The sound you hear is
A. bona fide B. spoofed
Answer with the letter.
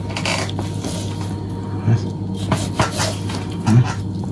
A